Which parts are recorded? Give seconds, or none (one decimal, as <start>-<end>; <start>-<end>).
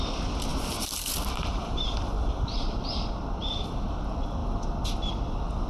0.0-0.5; 2.8-5.7